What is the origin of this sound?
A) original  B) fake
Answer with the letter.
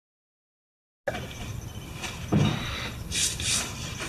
A